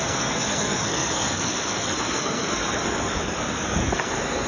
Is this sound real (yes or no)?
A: no